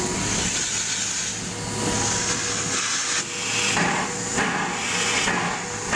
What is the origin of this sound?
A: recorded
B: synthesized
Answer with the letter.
A